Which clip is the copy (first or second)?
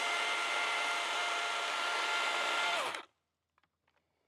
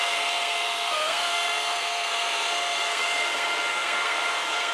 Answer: second